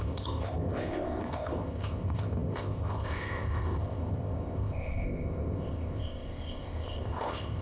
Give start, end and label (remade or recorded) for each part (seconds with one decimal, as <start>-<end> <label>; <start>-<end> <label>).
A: 0.0-7.6 remade